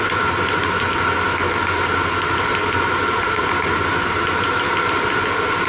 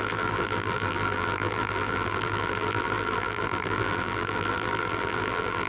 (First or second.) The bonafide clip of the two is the first